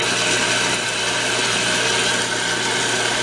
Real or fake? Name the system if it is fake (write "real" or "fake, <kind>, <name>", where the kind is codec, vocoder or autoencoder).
real